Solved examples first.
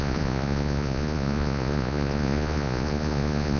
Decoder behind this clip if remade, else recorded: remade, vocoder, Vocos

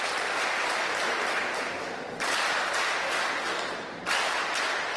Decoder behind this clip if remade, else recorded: recorded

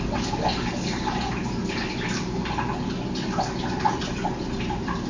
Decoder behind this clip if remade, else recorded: recorded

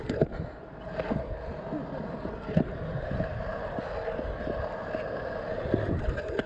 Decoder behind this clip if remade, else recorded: recorded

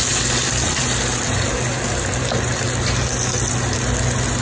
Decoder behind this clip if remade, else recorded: recorded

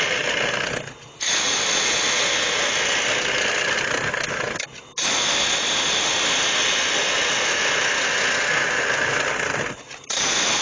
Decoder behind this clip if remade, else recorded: recorded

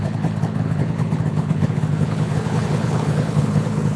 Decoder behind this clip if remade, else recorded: remade, codec, HILCodec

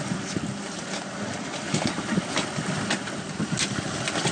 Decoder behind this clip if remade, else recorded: recorded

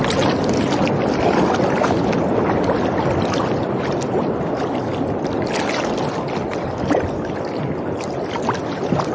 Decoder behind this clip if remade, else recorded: recorded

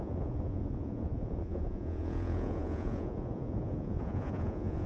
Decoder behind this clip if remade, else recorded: remade, vocoder, Vocos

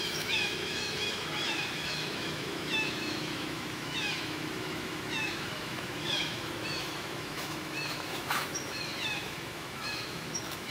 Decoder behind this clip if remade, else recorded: remade, autoencoder, DAC-VAE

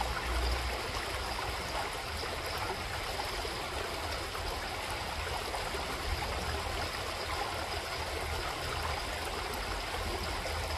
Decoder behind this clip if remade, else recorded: recorded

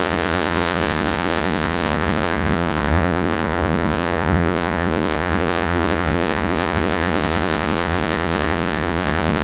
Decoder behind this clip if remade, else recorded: remade, vocoder, Vocos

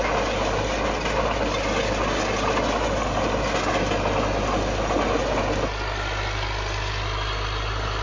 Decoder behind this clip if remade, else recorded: recorded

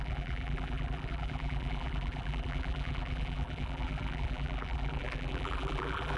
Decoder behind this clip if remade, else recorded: remade, vocoder, BigVGAN v2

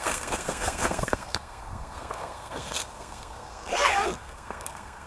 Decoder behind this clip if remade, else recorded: remade, codec, SNAC